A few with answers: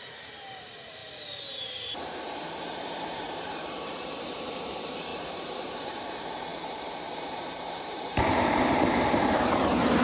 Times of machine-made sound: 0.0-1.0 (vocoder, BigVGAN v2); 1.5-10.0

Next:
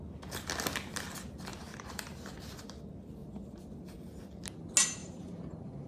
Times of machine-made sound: 1.5-2.4 (vocoder, BigVGAN v2); 3.2-4.2; 5.0-5.9

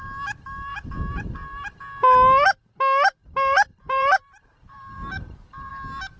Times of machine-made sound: 0.7-1.8 (vocoder, BigVGAN v2); 3.2-5.7

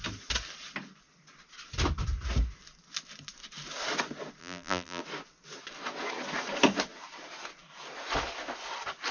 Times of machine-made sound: 4.4-5.0 (vocoder, BigVGAN v2)

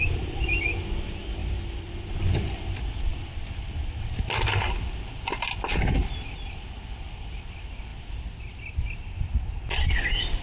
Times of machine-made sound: 1.4-2.2 (vocoder, BigVGAN v2); 7.9-8.5

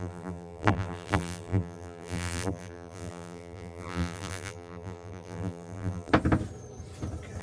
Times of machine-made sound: 0.0-6.1 (vocoder, BigVGAN v2)

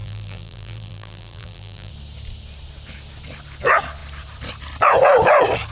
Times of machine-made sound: 0.0-1.9 (vocoder, BigVGAN v2)